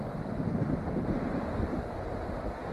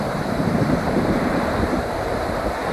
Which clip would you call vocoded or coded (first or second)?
second